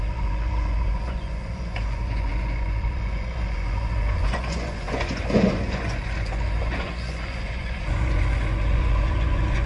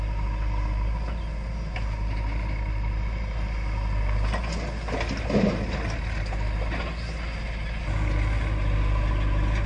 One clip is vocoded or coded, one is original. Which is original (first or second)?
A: second